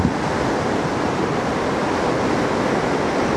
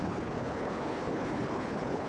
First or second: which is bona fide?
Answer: first